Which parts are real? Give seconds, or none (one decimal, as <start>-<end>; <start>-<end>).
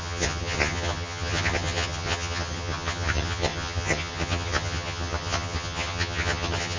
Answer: none